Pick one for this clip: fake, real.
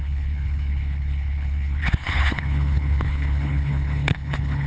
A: fake